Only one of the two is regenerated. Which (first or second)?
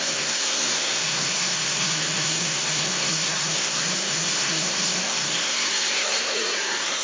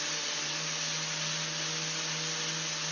first